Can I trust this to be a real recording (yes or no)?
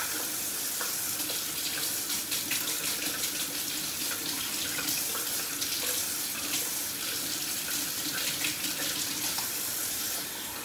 yes